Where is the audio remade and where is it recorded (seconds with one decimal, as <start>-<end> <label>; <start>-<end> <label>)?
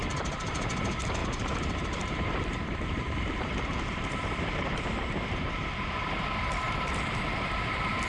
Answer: 0.0-1.2 recorded; 1.2-5.6 remade; 5.6-8.1 recorded